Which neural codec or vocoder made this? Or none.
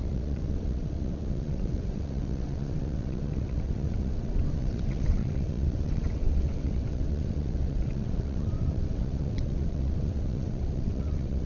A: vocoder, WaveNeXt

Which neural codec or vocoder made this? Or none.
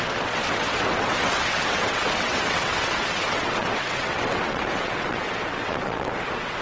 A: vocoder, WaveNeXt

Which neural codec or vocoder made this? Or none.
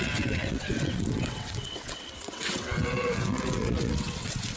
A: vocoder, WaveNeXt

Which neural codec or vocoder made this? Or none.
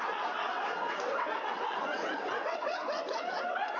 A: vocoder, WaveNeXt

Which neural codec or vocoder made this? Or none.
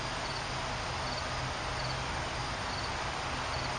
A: none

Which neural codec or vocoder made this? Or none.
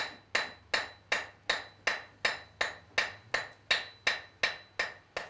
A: none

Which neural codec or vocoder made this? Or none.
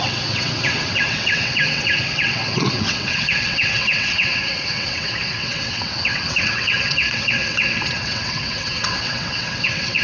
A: vocoder, WaveNeXt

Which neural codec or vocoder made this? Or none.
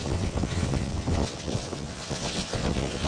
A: vocoder, WaveNeXt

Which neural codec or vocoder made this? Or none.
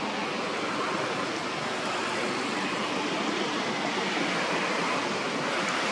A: none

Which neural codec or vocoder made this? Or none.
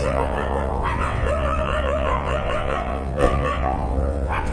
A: vocoder, WaveNeXt